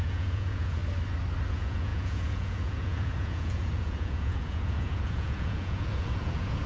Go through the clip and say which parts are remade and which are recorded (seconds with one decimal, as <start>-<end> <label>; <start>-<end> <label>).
0.0-0.8 remade; 0.8-1.5 recorded; 1.5-6.7 remade